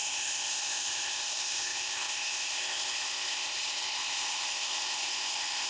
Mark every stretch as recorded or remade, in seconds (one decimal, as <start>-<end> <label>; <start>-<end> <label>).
0.0-5.7 remade